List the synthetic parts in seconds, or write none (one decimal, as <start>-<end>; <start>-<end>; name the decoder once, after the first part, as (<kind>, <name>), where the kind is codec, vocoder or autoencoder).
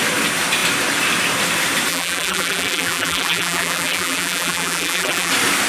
1.9-5.3 (vocoder, BigVGAN v2)